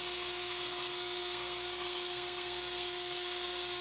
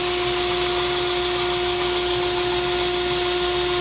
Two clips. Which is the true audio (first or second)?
second